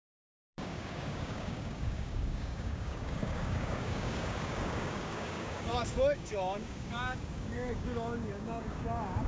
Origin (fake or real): fake